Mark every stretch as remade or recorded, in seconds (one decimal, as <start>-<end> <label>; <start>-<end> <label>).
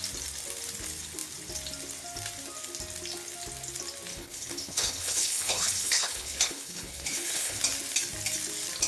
0.0-4.1 recorded; 4.1-7.6 remade; 7.6-8.9 recorded